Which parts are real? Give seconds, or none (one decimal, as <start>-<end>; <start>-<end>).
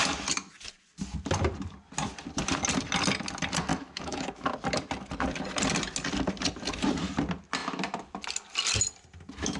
0.0-3.7; 4.5-9.6